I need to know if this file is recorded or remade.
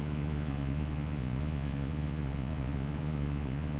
remade